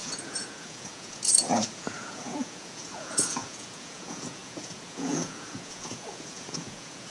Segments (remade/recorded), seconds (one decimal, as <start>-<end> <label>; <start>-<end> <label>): 0.0-7.1 remade